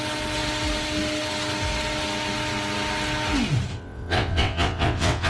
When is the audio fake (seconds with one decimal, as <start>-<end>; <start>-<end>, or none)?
3.7-5.3